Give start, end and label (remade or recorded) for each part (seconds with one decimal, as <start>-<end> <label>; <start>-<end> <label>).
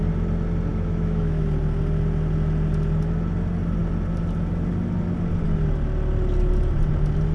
0.0-0.7 recorded; 0.7-1.4 remade; 1.4-7.3 recorded